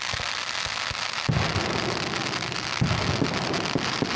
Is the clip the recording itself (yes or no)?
yes